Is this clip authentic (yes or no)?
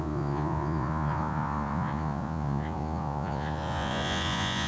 no